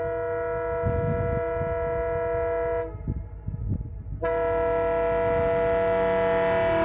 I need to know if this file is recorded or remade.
recorded